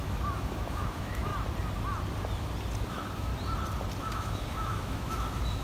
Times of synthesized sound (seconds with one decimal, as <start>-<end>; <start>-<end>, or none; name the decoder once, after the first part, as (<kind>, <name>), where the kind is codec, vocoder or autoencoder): 0.0-1.3 (autoencoder, DAC-VAE); 2.9-3.3; 4.0-5.6